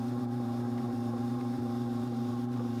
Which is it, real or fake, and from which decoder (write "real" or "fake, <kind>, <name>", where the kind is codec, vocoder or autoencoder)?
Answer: fake, vocoder, BigVGAN v2